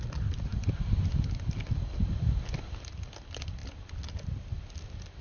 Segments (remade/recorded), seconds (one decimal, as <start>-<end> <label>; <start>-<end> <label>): 0.0-5.2 recorded